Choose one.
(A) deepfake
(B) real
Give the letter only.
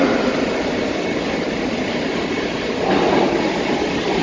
B